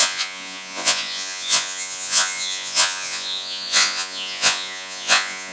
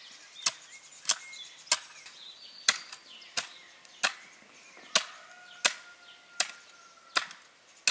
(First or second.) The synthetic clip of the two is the first